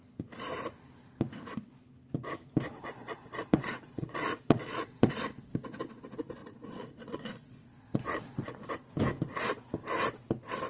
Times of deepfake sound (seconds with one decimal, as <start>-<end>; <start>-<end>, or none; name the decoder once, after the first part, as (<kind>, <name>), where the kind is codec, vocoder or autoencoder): 2.7-5.1 (vocoder, Vocos); 6.4-8.7